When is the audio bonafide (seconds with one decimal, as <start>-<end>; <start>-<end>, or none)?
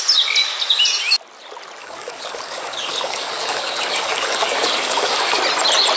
0.0-1.8; 5.4-6.0